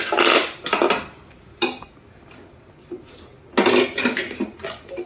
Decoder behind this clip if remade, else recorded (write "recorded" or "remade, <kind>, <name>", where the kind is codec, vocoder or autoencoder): recorded